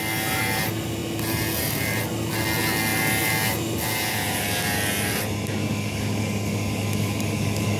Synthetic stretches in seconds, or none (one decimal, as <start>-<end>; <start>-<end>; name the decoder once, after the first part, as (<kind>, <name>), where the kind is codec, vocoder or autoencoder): 5.6-7.8 (codec, DAC)